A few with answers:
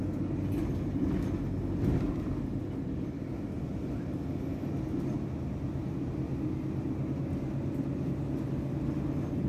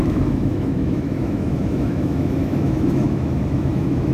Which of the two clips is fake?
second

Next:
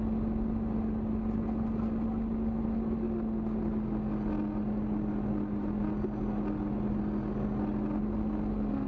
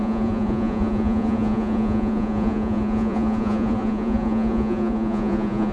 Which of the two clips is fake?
second